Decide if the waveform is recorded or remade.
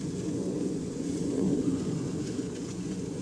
remade